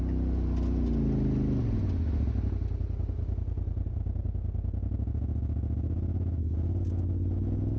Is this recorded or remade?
recorded